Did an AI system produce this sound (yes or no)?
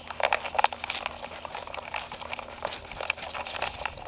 no